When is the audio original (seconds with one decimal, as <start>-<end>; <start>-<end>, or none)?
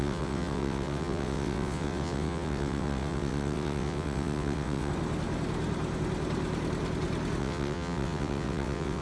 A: 4.9-7.4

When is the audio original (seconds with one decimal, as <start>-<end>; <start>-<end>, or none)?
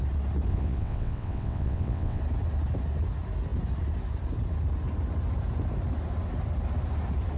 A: 0.0-0.5; 2.2-7.4